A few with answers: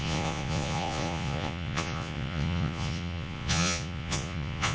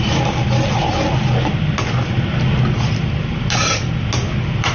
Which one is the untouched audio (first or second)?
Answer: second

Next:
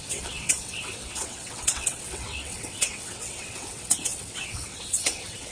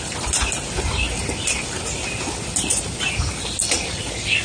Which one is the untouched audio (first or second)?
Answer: second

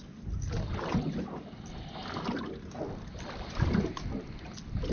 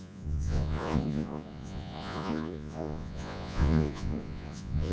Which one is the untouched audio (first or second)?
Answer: first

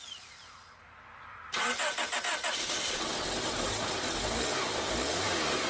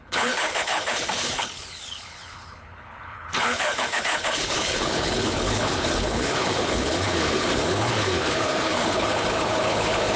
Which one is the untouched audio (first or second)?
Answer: first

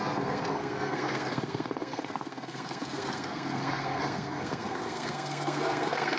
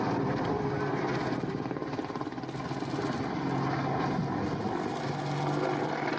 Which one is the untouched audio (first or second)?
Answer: second